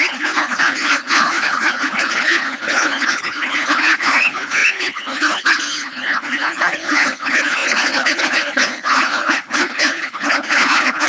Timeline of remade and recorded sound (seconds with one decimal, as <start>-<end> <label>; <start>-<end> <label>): 0.0-11.1 remade